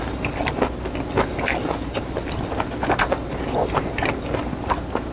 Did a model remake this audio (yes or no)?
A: no